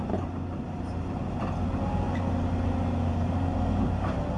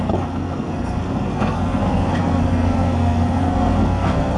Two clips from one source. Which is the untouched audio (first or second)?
first